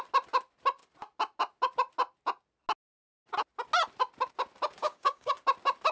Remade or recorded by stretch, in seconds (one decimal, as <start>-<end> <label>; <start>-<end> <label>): 0.0-4.8 recorded; 4.8-5.3 remade; 5.3-5.9 recorded